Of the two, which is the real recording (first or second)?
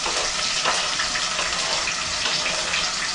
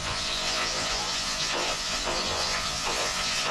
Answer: first